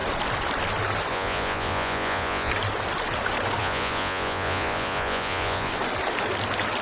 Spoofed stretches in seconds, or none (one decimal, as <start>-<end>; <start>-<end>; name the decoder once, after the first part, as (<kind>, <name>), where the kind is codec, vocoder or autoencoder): 1.1-2.5 (vocoder, Vocos); 3.6-5.7